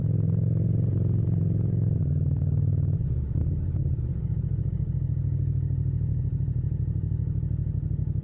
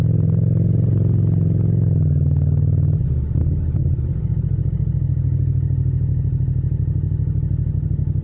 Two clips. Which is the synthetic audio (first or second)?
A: first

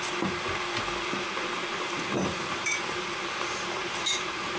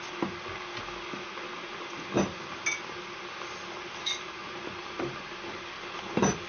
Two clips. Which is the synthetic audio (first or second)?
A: first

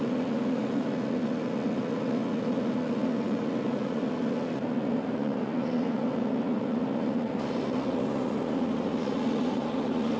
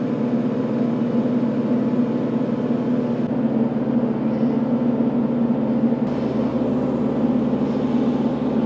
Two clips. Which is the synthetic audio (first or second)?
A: first